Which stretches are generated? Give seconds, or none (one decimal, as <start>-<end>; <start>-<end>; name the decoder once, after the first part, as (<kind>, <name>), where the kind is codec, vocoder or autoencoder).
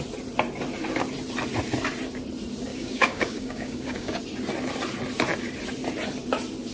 2.7-4.2 (codec, DAC)